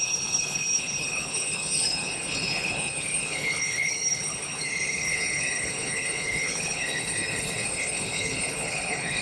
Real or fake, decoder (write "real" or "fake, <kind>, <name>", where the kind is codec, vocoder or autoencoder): fake, codec, HILCodec